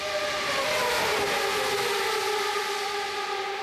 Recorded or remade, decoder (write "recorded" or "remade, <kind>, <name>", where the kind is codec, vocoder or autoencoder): recorded